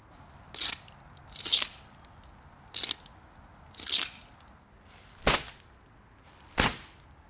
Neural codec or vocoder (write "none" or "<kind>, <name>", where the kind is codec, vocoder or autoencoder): none